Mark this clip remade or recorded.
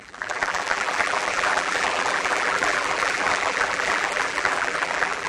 remade